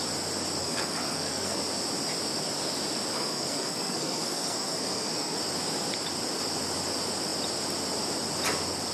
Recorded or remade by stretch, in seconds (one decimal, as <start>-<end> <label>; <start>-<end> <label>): 0.0-0.6 recorded; 0.6-1.6 remade; 1.6-3.1 recorded; 3.1-5.4 remade; 5.4-8.9 recorded